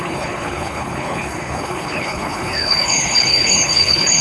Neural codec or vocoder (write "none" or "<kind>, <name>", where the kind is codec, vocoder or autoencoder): codec, HILCodec